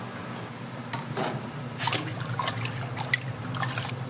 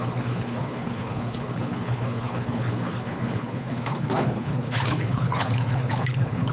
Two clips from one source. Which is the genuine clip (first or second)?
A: first